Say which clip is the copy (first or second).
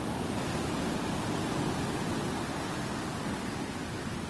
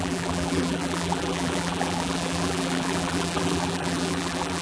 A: second